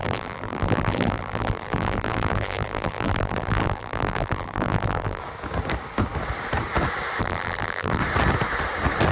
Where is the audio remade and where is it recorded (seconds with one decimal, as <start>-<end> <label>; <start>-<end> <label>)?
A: 0.0-5.2 remade; 5.2-7.2 recorded; 7.2-8.0 remade; 8.0-9.1 recorded